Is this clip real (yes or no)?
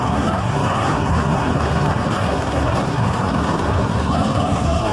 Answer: no